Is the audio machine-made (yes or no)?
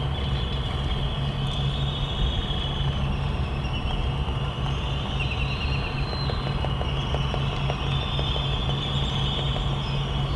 no